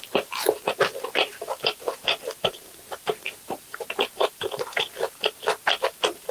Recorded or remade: remade